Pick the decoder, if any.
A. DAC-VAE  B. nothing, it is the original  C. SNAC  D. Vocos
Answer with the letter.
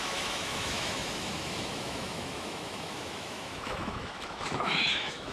A